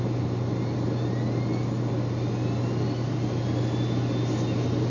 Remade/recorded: recorded